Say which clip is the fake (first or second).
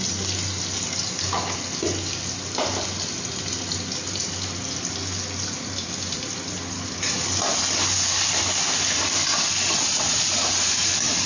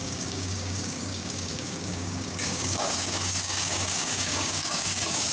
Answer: second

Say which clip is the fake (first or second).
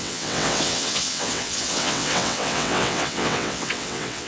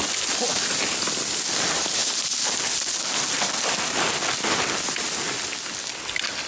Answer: first